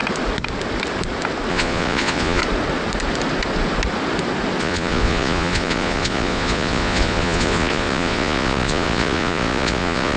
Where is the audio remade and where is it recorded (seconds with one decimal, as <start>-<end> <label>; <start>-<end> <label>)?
0.0-1.5 recorded; 1.5-2.4 remade; 2.4-4.6 recorded; 4.6-10.2 remade